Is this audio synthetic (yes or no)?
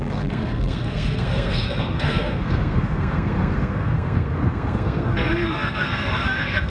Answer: yes